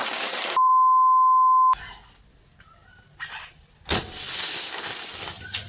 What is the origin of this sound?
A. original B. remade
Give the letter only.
A